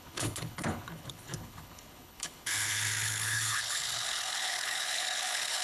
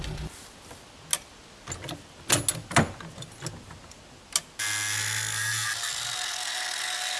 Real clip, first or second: second